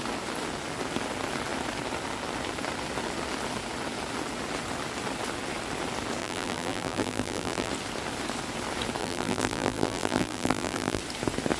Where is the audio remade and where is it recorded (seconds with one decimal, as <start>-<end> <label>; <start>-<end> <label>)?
0.0-6.2 recorded; 6.2-7.7 remade; 7.7-9.0 recorded; 9.0-11.0 remade; 11.0-11.6 recorded